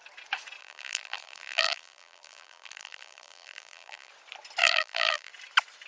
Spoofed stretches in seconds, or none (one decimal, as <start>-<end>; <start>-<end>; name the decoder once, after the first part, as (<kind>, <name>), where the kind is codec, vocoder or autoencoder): 0.6-4.1 (vocoder, BigVGAN v2); 4.6-5.3